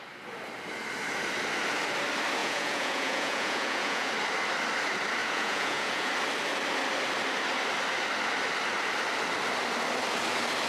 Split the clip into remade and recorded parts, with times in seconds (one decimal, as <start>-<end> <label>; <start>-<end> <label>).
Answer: 0.0-2.4 recorded; 2.4-4.1 remade; 4.1-5.2 recorded; 5.2-6.1 remade; 6.1-10.7 recorded